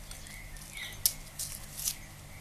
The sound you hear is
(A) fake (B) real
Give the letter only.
B